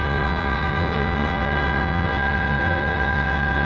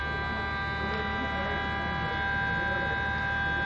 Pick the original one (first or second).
second